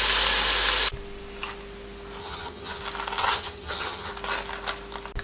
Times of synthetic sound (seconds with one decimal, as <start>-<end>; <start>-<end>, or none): 2.2-2.8; 3.2-4.1